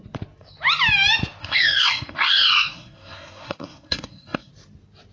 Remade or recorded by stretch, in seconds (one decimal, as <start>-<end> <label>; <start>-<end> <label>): 0.0-1.4 recorded; 1.4-4.5 remade; 4.5-5.1 recorded